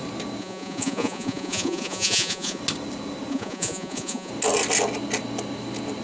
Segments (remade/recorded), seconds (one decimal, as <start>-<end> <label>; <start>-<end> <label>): 0.0-0.4 recorded; 0.4-2.6 remade; 2.6-3.3 recorded; 3.3-4.3 remade; 4.3-6.0 recorded